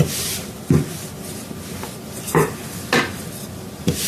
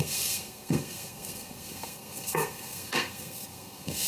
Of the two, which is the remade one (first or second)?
second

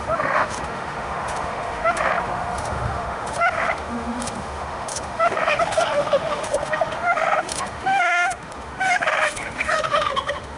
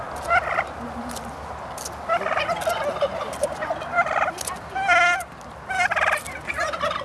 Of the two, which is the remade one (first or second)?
first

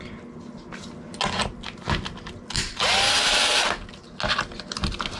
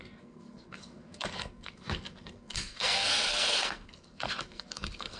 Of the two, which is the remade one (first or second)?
second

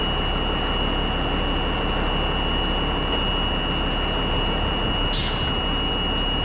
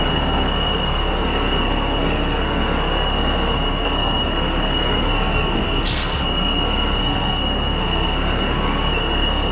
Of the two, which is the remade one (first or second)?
second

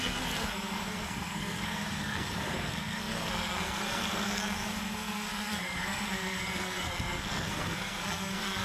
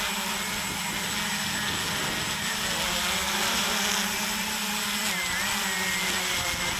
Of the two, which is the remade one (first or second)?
first